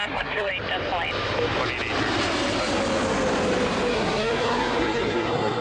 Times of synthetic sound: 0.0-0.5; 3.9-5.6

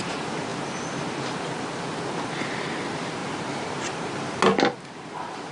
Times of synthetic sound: none